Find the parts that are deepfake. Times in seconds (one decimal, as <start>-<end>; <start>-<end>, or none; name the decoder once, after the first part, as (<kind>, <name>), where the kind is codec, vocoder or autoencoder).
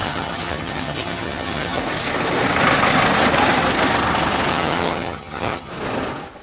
0.0-1.8 (vocoder, HiFi-GAN); 4.5-5.7